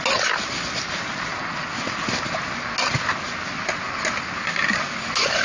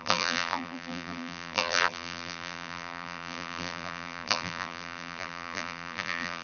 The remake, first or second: second